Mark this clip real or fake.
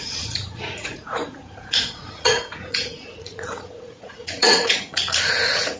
fake